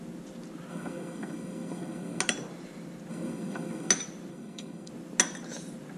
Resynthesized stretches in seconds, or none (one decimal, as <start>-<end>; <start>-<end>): 0.7-2.2; 3.1-3.9; 4.3-4.9